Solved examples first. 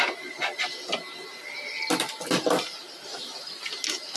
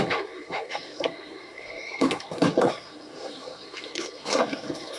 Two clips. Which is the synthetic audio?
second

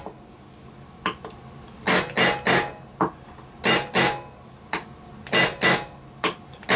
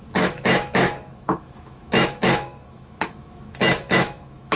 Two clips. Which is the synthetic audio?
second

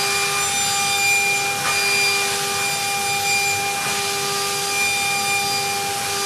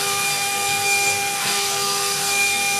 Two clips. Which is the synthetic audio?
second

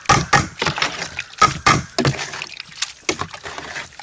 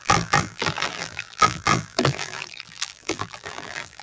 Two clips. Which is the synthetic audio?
second